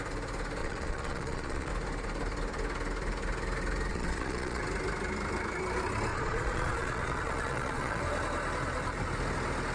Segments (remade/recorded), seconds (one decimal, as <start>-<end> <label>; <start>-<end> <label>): 0.0-0.6 recorded; 0.6-1.7 remade; 1.7-3.9 recorded; 3.9-4.6 remade; 4.6-6.1 recorded; 6.1-8.0 remade; 8.0-9.7 recorded